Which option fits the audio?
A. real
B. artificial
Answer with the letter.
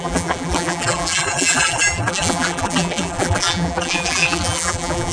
B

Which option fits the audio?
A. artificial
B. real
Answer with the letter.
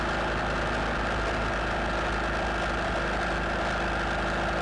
B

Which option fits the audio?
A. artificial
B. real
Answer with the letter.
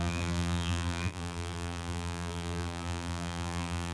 A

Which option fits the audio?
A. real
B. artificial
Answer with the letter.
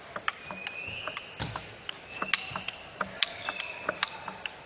A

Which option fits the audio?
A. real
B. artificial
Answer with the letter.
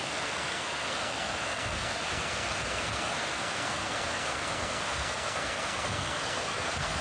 B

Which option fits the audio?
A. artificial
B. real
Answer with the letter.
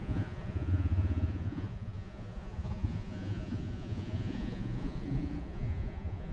A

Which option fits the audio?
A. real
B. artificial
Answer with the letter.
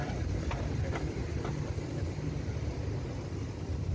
A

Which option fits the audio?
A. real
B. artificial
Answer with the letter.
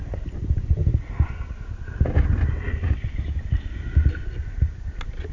A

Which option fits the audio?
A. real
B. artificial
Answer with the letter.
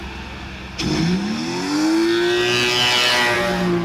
A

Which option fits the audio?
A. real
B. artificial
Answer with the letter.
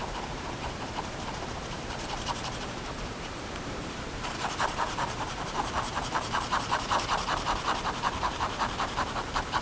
B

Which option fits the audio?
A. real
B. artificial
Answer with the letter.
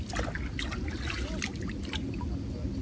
A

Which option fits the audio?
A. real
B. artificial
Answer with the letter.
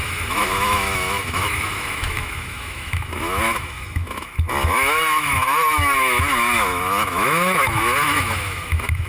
B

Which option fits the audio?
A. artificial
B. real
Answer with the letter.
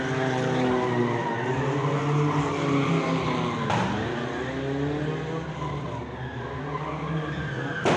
B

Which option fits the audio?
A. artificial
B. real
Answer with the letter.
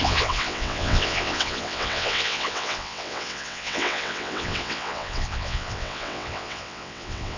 A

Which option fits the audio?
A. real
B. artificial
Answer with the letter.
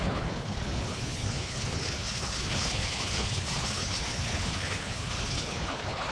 B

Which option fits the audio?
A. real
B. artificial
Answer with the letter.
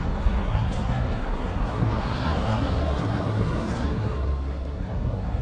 B